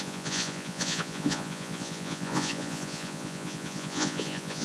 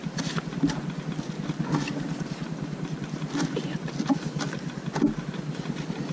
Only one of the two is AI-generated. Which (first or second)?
first